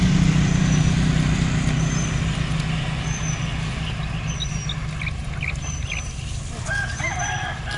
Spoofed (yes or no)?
no